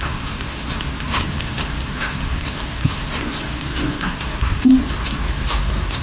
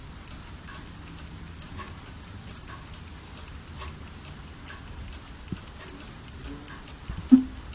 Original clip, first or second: second